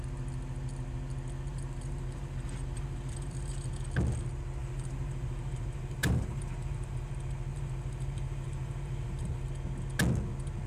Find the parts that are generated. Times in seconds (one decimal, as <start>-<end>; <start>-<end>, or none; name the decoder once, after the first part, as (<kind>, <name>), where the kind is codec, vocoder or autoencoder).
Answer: 1.5-3.7 (vocoder, BigVGAN v2); 4.6-7.1; 7.5-9.5